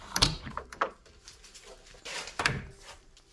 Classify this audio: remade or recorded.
remade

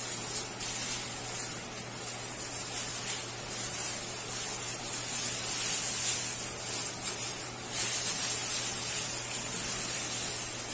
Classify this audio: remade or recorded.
recorded